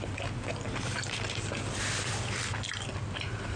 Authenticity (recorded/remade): recorded